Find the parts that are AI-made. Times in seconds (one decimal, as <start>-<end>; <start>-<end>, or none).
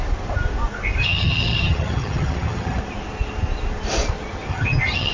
1.0-2.8; 4.5-5.1